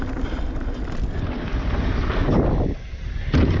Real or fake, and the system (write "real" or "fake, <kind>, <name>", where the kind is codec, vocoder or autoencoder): real